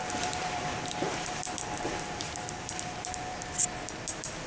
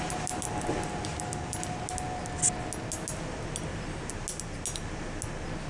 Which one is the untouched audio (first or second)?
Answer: second